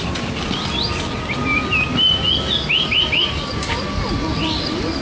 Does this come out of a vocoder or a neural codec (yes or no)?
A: no